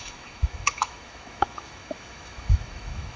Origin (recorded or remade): remade